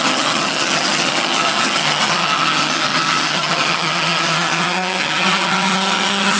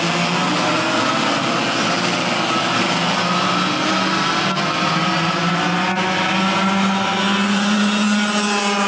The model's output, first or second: first